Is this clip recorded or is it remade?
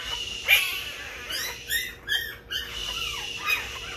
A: recorded